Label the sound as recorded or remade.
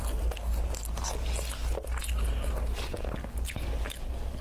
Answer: recorded